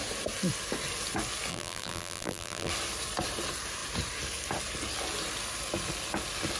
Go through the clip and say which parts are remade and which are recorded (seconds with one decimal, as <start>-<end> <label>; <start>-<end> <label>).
0.0-1.5 recorded; 1.5-2.7 remade; 2.7-6.6 recorded